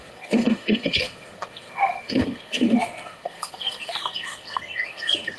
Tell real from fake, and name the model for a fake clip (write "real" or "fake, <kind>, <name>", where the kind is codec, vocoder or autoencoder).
fake, codec, SNAC